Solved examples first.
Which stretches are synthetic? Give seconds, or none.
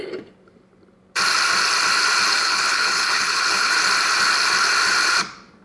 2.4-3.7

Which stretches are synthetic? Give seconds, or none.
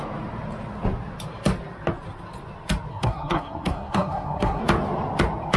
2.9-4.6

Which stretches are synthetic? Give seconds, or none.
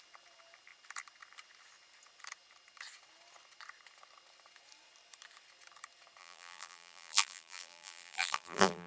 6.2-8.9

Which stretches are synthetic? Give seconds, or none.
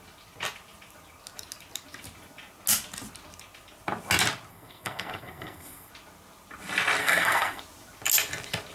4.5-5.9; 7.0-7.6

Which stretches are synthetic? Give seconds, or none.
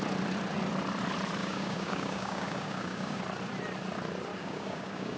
1.4-3.2; 4.3-5.2